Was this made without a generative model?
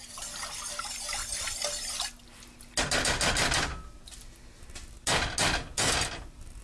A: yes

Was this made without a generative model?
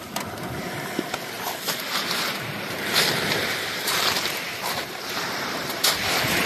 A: no